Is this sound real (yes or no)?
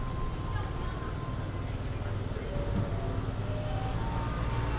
yes